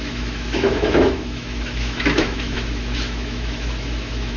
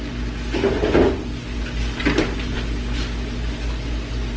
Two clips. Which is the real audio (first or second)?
second